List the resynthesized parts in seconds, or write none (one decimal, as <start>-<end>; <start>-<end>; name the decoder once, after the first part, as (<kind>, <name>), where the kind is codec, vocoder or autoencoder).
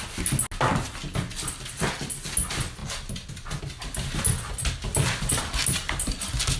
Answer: none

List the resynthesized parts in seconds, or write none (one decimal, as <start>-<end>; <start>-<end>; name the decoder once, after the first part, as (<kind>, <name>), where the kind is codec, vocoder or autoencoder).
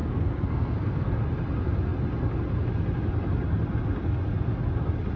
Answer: 0.0-1.2 (codec, SNAC)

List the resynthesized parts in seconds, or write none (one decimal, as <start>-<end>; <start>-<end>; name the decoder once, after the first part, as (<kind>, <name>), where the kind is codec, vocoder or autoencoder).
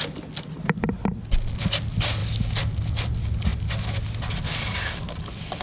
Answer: none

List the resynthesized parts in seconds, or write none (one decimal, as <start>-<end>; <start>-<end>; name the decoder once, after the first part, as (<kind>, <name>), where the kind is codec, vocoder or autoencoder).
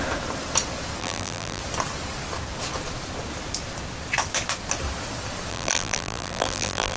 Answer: 1.0-1.6 (vocoder, BigVGAN v2); 5.5-7.0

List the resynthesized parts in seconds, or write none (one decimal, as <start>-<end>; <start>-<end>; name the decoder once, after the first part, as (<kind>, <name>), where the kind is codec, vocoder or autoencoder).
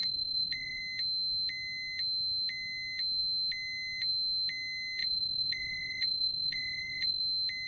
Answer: 0.0-0.8 (vocoder, Vocos); 5.0-7.2